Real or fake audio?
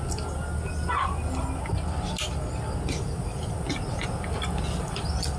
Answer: real